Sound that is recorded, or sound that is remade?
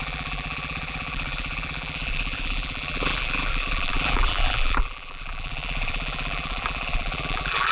remade